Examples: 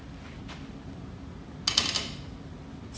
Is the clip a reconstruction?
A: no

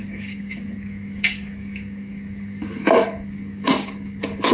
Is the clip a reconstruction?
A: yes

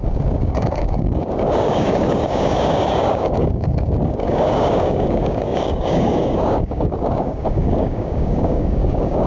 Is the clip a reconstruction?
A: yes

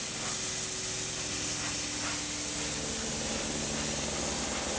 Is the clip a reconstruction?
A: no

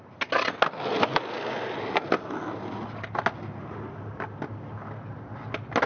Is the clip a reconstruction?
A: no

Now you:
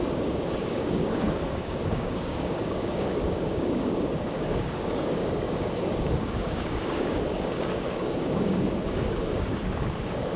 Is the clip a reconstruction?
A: yes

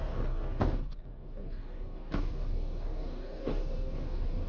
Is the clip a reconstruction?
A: yes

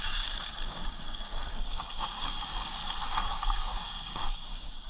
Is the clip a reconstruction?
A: yes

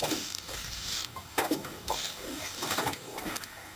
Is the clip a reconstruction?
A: yes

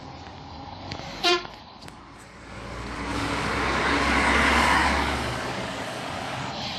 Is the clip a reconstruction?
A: yes